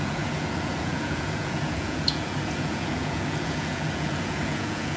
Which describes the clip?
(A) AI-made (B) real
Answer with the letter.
A